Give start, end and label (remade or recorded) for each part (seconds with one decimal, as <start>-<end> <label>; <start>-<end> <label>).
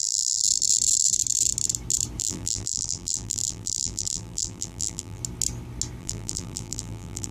0.0-0.4 remade; 0.4-2.2 recorded; 2.2-5.2 remade; 5.2-6.0 recorded; 6.0-7.3 remade